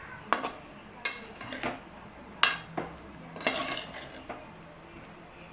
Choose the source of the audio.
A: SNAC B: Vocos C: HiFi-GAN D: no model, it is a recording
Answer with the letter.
D